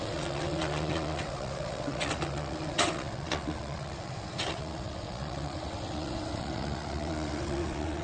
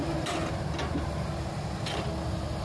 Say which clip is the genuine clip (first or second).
second